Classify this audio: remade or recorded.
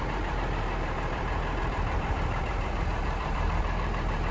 remade